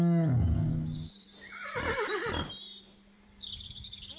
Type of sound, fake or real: real